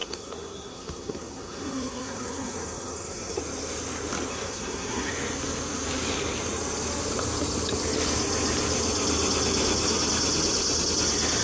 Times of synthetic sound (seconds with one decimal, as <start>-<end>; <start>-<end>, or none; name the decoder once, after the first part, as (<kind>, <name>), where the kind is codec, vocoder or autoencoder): 0.0-3.4 (codec, SNAC); 4.3-5.1